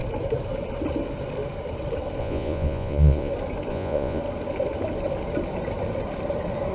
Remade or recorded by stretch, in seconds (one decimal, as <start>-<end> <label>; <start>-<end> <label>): 0.0-2.2 recorded; 2.2-3.3 remade; 3.3-3.7 recorded; 3.7-4.2 remade; 4.2-6.7 recorded